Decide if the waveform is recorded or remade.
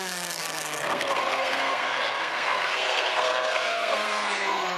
remade